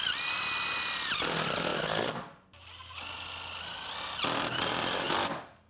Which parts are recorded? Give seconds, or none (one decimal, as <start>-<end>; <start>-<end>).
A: 0.0-5.7